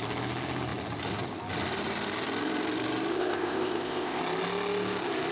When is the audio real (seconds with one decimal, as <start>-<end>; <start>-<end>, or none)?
0.0-3.1; 4.2-5.3